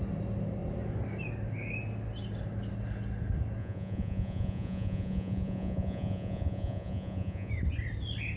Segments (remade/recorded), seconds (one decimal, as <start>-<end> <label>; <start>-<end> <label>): 0.0-3.6 recorded; 3.6-7.5 remade; 7.5-8.4 recorded